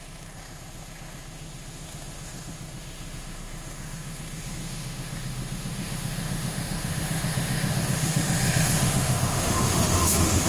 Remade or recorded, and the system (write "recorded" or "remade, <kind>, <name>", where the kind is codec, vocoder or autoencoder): remade, autoencoder, DAC-VAE